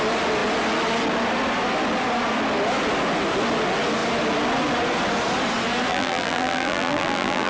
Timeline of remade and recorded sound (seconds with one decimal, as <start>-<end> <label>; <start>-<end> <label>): 0.0-5.9 recorded; 5.9-7.5 remade